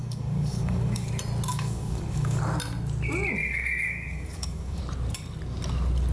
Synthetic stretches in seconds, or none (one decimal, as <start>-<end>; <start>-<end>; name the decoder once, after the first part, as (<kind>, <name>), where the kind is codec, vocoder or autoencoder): 0.0-1.1 (codec, DAC); 1.5-2.4; 3.4-4.8

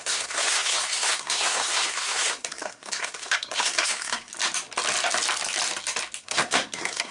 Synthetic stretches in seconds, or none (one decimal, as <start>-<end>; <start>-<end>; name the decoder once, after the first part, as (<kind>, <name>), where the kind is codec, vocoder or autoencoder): 0.0-4.3 (codec, SNAC); 6.2-7.1

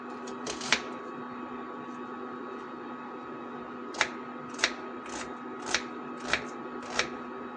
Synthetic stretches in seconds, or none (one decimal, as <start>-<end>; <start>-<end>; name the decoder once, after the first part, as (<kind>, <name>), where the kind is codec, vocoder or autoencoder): none

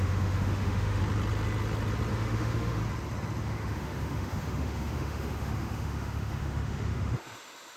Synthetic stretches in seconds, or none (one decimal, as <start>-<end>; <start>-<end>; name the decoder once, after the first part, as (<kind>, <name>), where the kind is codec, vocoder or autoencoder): 0.0-1.0 (autoencoder, DAC-VAE); 2.1-2.8; 3.4-7.8

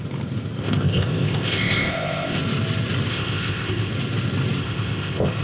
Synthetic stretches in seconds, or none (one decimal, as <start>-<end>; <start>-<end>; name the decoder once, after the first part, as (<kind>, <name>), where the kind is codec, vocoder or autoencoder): 0.6-2.4 (codec, ZipCodec); 3.1-3.9; 4.6-5.4

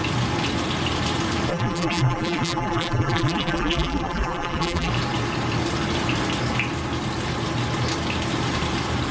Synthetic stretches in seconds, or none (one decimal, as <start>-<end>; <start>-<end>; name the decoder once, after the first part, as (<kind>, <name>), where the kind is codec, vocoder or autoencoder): 1.5-4.9 (vocoder, BigVGAN v2)

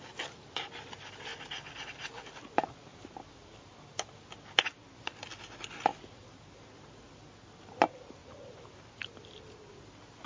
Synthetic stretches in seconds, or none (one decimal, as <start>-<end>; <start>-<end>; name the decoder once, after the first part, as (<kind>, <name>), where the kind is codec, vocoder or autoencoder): 2.9-4.1 (vocoder, BigVGAN v2); 6.2-6.7; 8.2-8.9

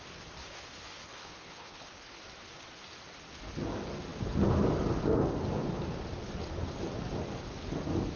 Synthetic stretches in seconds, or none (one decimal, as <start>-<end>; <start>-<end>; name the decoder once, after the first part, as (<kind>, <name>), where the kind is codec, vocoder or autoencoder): 0.4-2.2 (codec, HILCodec)